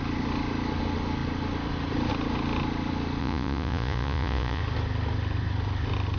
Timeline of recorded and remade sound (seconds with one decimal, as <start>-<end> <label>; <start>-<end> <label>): 0.0-3.2 recorded; 3.2-4.6 remade; 4.6-6.2 recorded